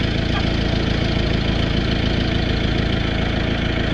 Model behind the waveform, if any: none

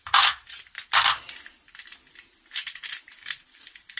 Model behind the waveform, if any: none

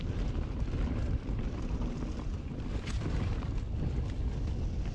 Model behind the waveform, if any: none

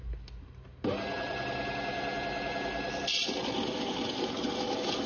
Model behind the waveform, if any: none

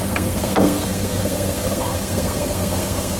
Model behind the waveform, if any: codec, SNAC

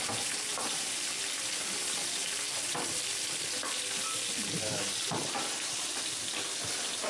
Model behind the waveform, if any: none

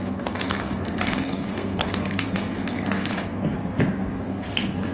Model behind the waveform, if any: codec, SNAC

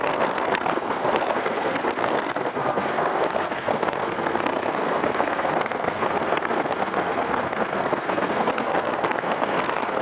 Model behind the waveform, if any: codec, SNAC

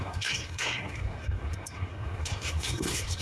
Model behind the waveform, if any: codec, SNAC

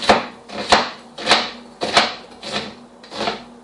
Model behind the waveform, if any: none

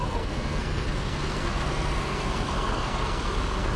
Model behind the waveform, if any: codec, SNAC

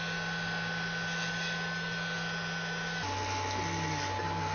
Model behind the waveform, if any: none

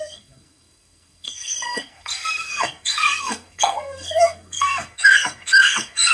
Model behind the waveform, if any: codec, SNAC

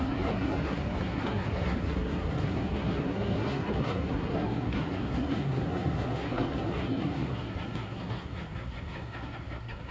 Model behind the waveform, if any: codec, SNAC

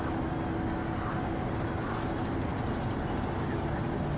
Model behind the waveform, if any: none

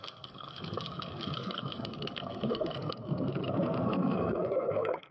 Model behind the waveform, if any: codec, SNAC